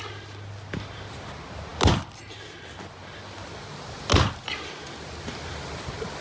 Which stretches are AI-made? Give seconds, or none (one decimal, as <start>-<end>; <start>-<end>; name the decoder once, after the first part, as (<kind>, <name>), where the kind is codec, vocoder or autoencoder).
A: none